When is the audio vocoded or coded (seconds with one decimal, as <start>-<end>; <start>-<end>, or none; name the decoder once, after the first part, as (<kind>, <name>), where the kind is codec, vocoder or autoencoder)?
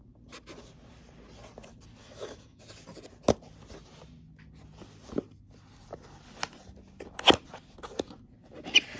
2.0-2.6 (autoencoder, DAC-VAE)